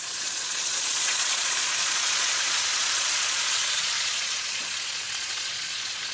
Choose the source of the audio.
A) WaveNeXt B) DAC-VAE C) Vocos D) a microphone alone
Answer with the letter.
C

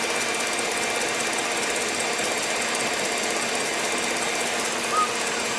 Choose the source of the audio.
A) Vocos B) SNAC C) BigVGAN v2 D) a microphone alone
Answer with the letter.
D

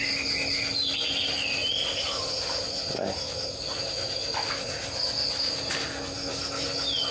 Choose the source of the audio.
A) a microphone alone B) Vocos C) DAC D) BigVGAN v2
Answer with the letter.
A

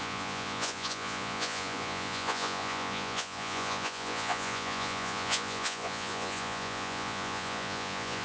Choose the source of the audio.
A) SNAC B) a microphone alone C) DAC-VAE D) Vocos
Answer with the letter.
D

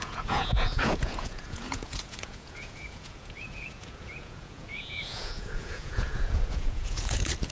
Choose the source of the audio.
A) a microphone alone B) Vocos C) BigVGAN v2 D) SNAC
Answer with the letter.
B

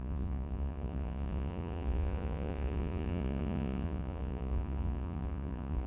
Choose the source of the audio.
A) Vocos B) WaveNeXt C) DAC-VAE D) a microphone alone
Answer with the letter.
A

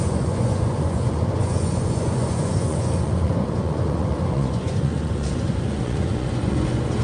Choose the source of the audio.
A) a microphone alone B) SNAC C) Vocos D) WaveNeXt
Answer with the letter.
C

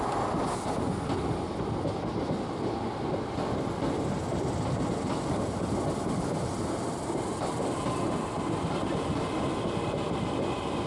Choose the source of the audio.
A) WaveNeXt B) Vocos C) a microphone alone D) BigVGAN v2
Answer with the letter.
C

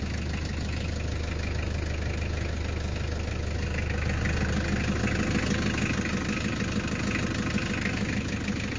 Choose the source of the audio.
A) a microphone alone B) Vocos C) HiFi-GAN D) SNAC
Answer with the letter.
A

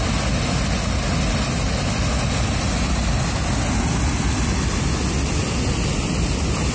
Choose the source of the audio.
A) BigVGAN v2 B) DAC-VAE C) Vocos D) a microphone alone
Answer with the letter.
D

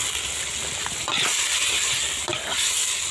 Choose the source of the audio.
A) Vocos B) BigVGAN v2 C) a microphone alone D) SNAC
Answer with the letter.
C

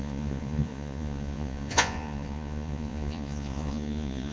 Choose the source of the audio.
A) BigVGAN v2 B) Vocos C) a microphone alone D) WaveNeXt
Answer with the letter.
B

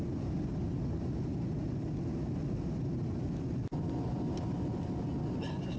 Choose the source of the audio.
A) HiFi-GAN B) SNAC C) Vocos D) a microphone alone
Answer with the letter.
D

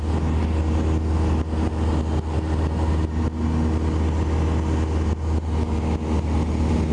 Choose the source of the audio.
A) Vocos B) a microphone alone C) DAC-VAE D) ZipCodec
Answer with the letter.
B